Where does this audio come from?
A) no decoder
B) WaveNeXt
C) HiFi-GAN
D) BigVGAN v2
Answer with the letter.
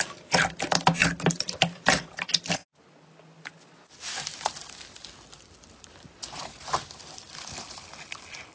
A